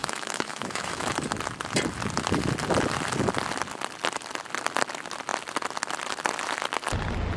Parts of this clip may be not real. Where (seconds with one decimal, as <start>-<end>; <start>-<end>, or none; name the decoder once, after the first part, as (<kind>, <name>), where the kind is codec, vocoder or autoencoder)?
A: 0.0-1.1 (autoencoder, DAC-VAE)